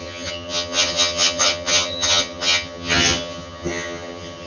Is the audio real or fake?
fake